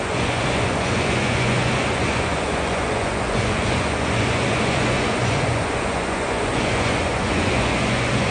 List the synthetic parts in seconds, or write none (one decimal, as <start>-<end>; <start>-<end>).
0.0-8.3